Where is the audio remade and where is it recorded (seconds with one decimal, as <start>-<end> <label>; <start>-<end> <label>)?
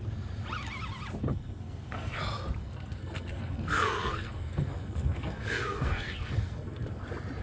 0.0-1.3 recorded; 1.3-2.2 remade; 2.2-2.6 recorded; 2.6-7.0 remade; 7.0-7.4 recorded